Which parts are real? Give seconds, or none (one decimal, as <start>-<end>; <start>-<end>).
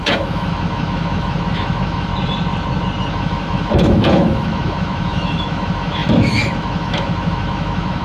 2.1-3.1